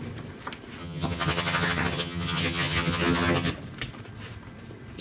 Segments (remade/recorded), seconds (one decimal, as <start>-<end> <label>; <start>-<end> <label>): 0.0-0.8 recorded; 0.8-3.5 remade; 3.5-5.0 recorded